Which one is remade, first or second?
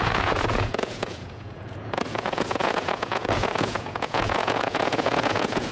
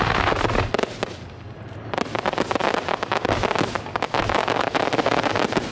first